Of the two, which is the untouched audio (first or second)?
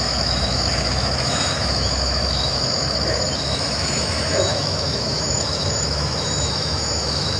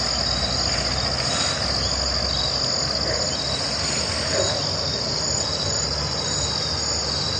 second